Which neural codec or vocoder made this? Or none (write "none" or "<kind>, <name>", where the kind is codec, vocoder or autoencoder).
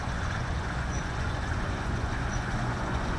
vocoder, Vocos